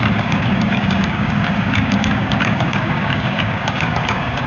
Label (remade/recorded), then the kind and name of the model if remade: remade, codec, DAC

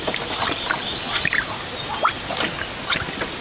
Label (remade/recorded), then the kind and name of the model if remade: recorded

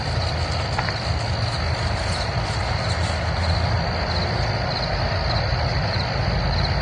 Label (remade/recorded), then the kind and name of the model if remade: recorded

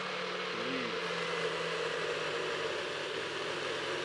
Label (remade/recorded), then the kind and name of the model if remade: recorded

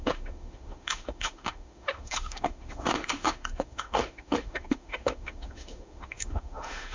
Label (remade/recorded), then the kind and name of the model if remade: remade, autoencoder, DAC-VAE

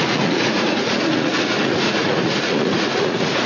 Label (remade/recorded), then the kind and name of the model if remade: remade, vocoder, Vocos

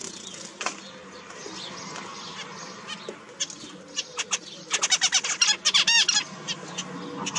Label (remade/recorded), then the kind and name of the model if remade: recorded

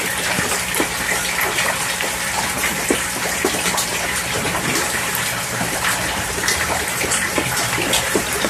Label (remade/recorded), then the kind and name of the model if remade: remade, vocoder, BigVGAN v2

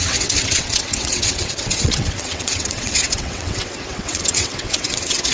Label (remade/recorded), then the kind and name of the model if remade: remade, vocoder, WaveNeXt